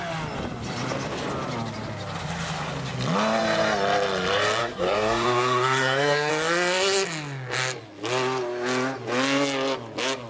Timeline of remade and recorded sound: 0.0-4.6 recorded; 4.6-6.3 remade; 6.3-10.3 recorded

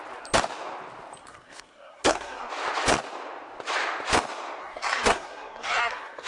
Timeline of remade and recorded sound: 0.0-1.2 recorded; 1.2-2.5 remade; 2.5-4.6 recorded; 4.6-6.3 remade

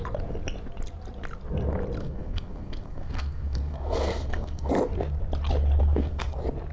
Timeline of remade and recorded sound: 0.0-2.0 recorded; 2.0-4.7 remade; 4.7-5.8 recorded; 5.8-6.3 remade; 6.3-6.7 recorded

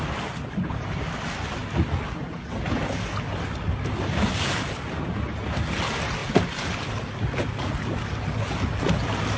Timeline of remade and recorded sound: 0.0-9.4 recorded